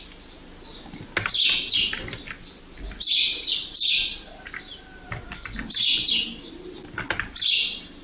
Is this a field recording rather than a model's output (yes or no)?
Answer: yes